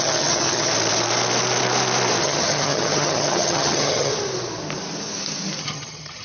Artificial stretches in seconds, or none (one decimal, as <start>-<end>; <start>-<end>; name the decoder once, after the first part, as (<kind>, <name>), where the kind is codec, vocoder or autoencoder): 0.0-0.7 (vocoder, HiFi-GAN); 2.2-4.1; 5.6-6.2